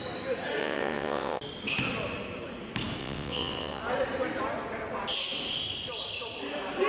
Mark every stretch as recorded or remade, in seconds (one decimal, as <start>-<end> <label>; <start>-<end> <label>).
0.0-0.6 recorded; 0.6-1.4 remade; 1.4-3.0 recorded; 3.0-3.8 remade; 3.8-6.9 recorded